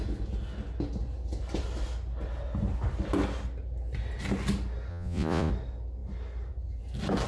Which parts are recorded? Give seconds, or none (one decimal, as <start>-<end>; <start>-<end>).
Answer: 0.0-4.9; 5.5-7.3